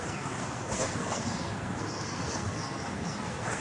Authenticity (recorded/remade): remade